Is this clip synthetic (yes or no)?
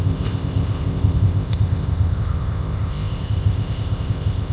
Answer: yes